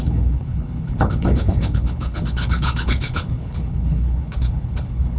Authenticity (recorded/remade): remade